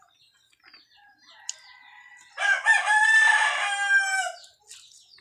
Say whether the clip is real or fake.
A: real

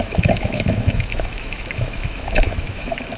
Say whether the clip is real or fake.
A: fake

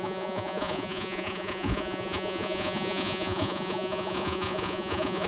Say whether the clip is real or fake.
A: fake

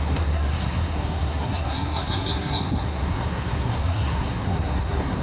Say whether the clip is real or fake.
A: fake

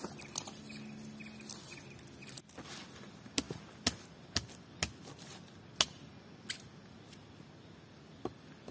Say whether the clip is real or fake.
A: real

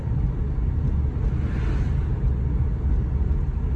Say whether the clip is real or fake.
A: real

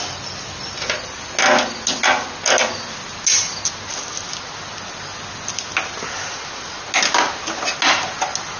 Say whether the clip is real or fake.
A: real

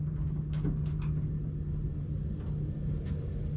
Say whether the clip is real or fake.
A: real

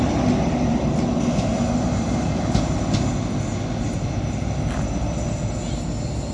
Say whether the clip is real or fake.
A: real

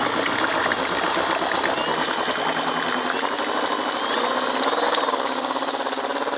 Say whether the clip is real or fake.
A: real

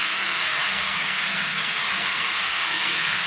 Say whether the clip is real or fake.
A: fake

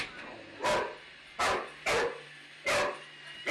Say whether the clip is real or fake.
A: real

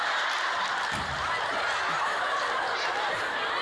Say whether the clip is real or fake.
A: real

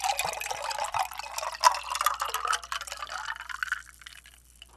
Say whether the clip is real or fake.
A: real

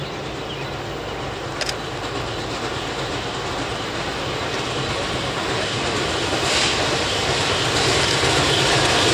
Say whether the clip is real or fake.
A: real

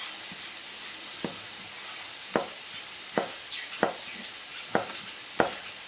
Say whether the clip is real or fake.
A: real